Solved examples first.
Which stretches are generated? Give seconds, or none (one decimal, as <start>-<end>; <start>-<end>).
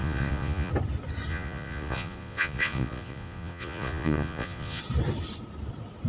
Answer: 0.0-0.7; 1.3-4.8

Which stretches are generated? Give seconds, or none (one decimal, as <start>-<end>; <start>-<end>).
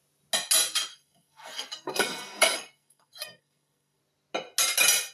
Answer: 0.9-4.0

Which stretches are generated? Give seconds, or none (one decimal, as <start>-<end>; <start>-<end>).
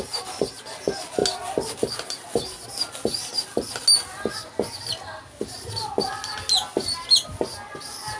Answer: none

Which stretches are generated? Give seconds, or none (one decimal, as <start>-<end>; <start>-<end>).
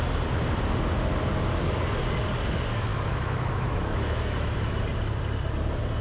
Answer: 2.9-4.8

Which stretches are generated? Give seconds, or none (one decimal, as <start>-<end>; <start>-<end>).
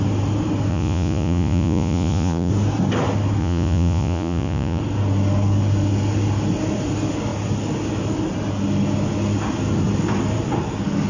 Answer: 0.7-2.5; 3.4-4.8